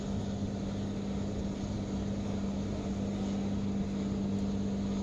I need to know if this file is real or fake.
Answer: real